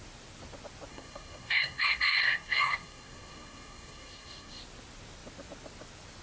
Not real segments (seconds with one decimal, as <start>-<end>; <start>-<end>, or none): 0.9-4.6